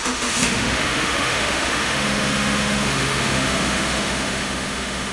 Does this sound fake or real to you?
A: fake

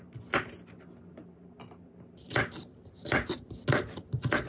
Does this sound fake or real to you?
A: real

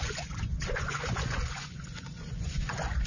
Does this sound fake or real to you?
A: fake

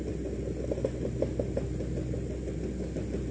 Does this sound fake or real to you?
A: real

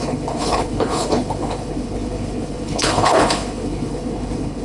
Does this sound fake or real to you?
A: fake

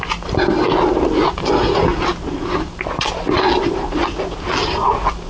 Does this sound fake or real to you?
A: real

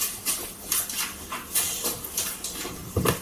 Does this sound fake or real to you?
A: real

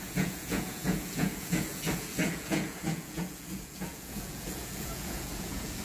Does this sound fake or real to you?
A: fake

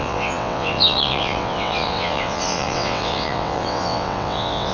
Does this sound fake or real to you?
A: fake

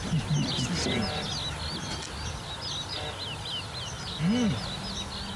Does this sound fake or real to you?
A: real